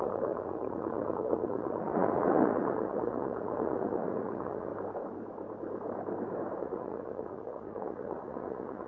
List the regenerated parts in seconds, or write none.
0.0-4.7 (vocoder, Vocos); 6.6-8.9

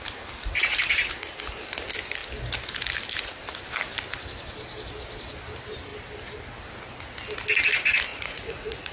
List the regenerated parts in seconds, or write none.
8.1-8.9 (vocoder, Vocos)